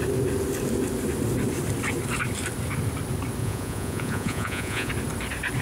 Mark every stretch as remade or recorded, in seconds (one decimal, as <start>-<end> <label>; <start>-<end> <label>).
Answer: 0.0-3.4 recorded; 3.4-4.9 remade; 4.9-5.6 recorded